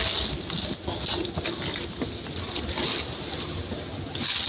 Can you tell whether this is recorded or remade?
recorded